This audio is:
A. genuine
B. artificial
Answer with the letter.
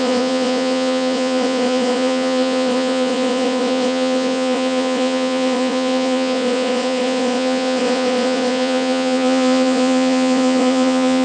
B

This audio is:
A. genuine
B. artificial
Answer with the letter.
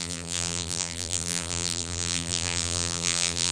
B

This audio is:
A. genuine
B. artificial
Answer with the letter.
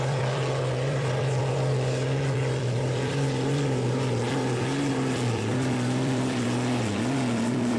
B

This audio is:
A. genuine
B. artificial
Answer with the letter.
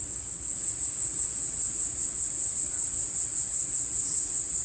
B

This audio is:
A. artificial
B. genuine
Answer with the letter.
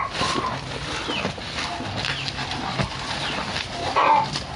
B